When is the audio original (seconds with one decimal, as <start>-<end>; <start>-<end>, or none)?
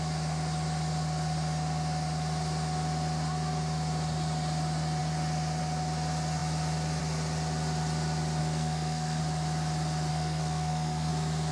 0.0-8.4; 9.2-10.1; 11.1-11.5